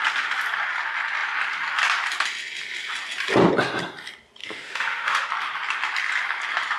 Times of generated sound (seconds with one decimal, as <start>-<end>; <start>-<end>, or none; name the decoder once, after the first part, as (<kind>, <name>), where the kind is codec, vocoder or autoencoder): 4.4-5.3 (autoencoder, DAC-VAE)